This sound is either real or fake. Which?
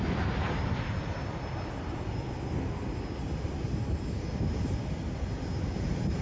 real